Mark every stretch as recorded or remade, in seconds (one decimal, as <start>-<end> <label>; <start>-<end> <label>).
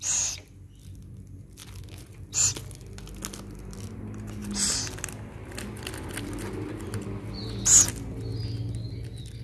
0.0-9.4 recorded